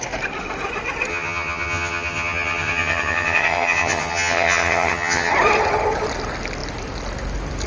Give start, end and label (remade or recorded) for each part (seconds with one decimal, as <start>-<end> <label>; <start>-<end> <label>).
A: 0.0-1.1 recorded; 1.1-5.3 remade; 5.3-7.7 recorded